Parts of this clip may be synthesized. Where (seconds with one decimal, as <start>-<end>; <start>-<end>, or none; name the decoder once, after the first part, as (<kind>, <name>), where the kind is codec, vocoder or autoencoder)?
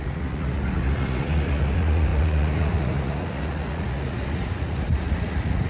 0.0-5.7 (vocoder, Vocos)